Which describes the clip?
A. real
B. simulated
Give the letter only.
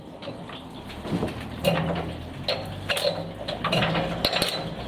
A